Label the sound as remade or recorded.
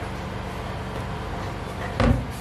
recorded